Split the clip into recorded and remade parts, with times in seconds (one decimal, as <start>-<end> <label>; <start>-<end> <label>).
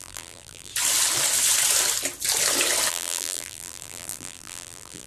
0.0-0.7 remade; 0.7-2.9 recorded; 2.9-5.1 remade